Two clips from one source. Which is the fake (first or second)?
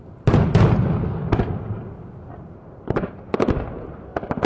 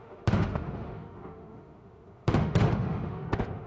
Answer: second